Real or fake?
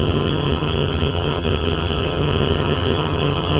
fake